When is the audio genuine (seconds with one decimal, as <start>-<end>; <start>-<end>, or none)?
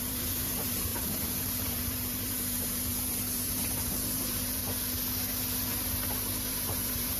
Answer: 4.6-6.5